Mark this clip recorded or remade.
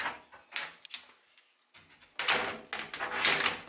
recorded